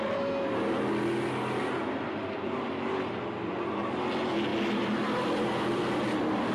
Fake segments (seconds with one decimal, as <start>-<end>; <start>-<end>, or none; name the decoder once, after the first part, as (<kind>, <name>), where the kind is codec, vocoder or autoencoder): 4.5-5.8 (vocoder, BigVGAN v2)